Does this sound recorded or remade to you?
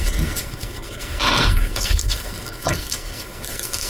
remade